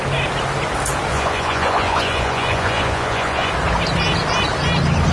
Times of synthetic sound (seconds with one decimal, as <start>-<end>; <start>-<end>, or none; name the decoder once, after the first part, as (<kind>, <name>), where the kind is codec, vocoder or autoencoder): 1.1-3.5 (vocoder, Vocos)